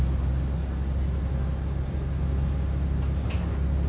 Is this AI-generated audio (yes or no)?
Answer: no